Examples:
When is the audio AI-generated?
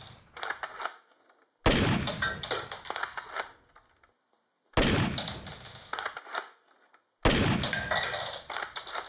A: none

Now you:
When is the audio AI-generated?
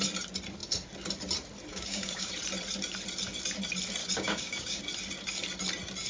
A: 1.7-2.3 (codec, DAC); 4.0-4.8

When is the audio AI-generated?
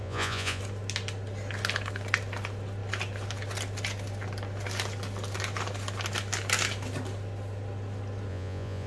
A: 0.0-0.6 (vocoder, Vocos); 8.3-8.9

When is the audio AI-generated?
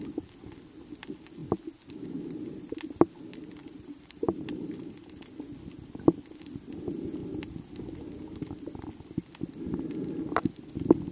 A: 3.6-5.2 (vocoder, BigVGAN v2)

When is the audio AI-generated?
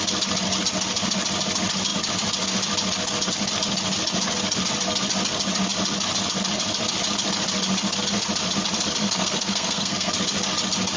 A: 9.0-10.1 (codec, SNAC)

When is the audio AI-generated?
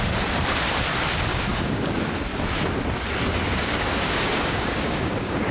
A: 1.3-2.0 (codec, DAC); 3.3-5.5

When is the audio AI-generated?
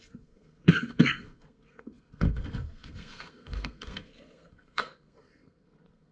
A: 0.0-6.1 (codec, SNAC)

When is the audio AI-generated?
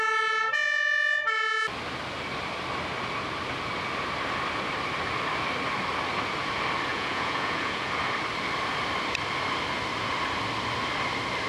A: 6.9-7.9 (vocoder, Vocos)